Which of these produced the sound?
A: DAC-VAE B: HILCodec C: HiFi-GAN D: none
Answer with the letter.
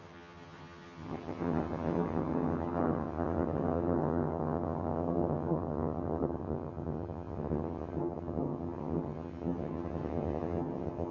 C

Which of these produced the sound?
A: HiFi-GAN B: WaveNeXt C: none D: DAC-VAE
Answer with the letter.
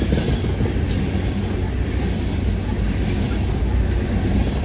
C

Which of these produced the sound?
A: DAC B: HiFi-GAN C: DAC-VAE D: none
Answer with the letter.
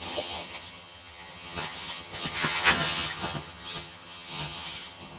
B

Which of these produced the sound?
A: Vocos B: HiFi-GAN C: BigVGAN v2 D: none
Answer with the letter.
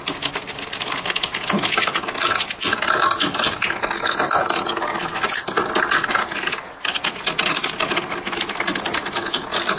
D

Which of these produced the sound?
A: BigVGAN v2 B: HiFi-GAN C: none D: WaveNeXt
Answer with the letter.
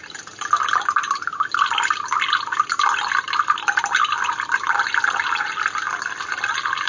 C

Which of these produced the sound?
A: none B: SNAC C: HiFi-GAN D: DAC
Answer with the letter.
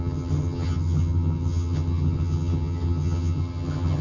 C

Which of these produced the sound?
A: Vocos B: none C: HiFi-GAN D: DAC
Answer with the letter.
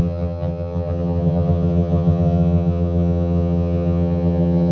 C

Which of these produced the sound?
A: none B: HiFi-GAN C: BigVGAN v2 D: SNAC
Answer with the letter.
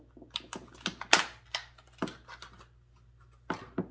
A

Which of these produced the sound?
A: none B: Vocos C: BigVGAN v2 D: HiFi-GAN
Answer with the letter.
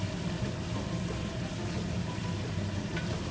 A